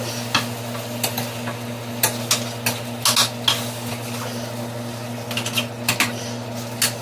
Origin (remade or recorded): recorded